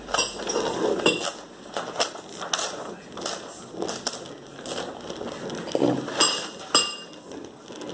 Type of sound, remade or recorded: recorded